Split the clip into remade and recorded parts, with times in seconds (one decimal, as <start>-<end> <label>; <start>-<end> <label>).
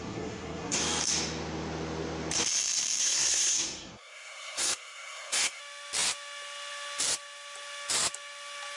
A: 0.0-0.8 remade; 0.8-3.0 recorded; 3.0-5.6 remade; 5.6-8.8 recorded